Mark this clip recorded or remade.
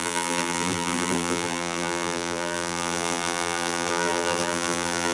remade